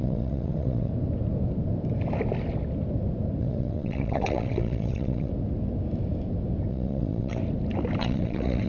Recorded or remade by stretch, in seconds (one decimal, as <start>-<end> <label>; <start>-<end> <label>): 0.0-0.9 remade; 0.9-3.4 recorded; 3.4-5.3 remade; 5.3-6.7 recorded; 6.7-7.4 remade; 7.4-8.0 recorded; 8.0-8.7 remade